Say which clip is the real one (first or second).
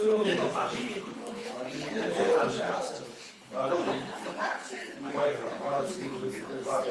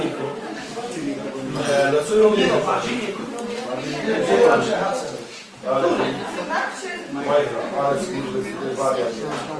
second